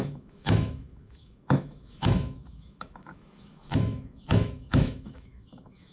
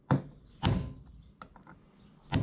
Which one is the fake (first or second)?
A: first